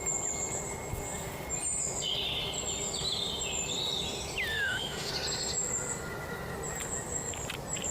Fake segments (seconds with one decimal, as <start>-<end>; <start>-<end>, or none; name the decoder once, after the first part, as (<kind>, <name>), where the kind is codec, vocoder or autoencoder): 4.5-5.1 (autoencoder, DAC-VAE)